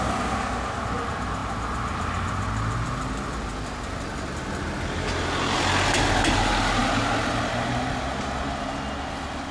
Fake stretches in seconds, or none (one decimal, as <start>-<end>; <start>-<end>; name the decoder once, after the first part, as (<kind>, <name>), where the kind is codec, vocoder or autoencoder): none